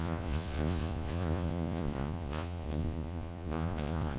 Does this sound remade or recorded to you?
remade